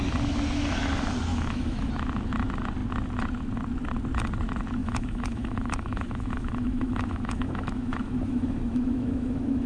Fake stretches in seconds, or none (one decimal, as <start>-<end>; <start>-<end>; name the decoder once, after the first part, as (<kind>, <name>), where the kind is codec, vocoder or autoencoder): 1.3-1.9 (autoencoder, DAC-VAE); 4.8-9.7